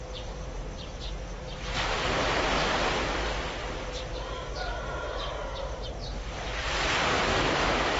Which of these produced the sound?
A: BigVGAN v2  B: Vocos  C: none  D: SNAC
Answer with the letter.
A